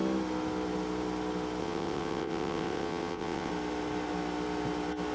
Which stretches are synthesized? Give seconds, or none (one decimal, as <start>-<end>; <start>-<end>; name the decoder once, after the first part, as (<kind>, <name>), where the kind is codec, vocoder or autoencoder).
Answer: 1.6-3.5 (vocoder, WaveNeXt)